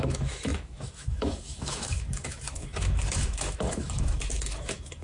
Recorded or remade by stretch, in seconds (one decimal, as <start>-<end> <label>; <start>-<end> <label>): 0.0-5.0 remade